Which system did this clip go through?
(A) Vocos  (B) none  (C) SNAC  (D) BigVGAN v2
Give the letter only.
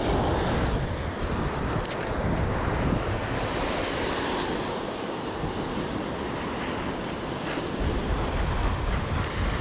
B